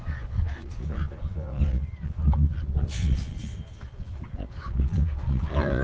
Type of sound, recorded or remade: remade